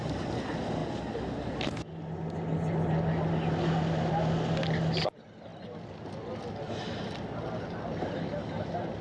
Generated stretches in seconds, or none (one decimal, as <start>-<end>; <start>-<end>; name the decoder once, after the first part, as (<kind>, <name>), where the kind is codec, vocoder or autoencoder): none